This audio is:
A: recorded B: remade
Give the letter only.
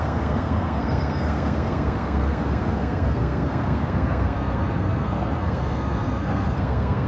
B